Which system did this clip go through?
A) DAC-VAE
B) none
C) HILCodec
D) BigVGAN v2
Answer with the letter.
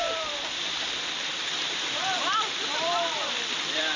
D